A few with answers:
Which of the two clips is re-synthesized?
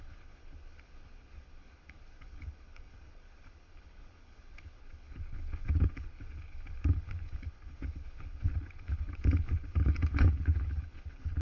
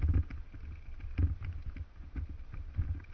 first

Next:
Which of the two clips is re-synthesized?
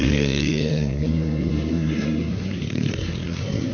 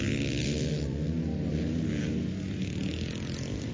first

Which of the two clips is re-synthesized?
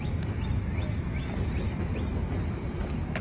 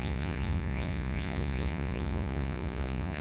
second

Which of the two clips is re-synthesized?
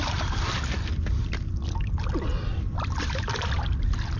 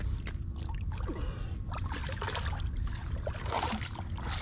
first